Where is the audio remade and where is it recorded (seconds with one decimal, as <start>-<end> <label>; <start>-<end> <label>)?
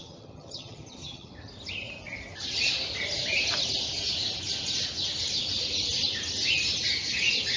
0.0-1.3 remade; 1.3-7.6 recorded